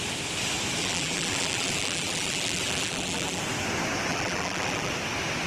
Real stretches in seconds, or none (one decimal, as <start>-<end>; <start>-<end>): 0.0-0.8; 3.4-4.1; 4.9-5.5